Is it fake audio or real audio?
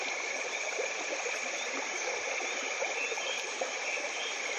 fake